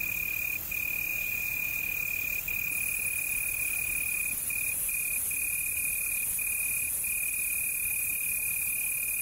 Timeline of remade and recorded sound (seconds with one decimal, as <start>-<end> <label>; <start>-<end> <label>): 0.0-1.1 recorded; 1.1-1.8 remade; 1.8-9.2 recorded